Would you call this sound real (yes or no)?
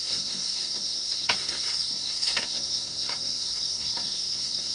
no